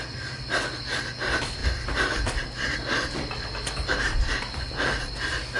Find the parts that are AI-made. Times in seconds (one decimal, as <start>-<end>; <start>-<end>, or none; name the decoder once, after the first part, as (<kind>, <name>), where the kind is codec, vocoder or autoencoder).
none